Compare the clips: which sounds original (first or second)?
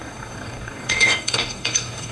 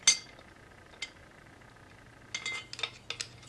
second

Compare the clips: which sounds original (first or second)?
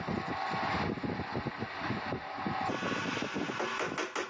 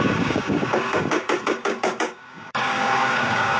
first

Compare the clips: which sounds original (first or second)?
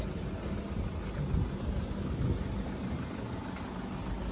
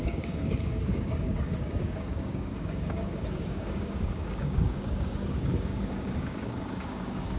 first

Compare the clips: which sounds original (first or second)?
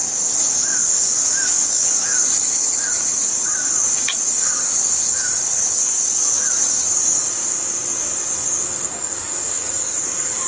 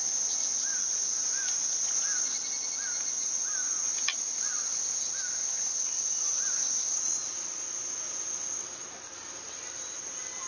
second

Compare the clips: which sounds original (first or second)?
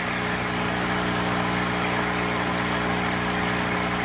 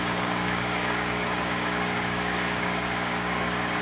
first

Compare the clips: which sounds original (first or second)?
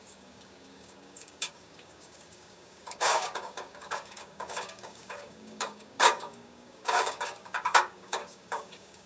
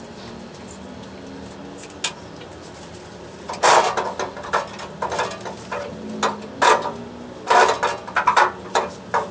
second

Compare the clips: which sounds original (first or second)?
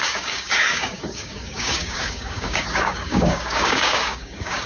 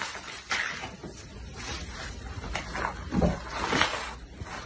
second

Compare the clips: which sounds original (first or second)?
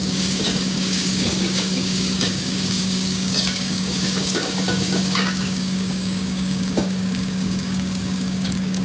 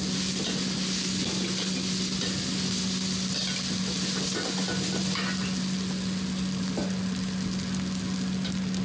second